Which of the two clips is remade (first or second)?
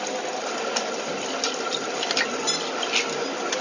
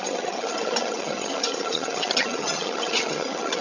second